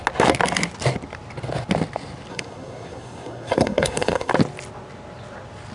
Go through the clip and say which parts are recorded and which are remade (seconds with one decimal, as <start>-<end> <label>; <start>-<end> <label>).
0.0-2.3 recorded; 2.3-4.3 remade; 4.3-5.7 recorded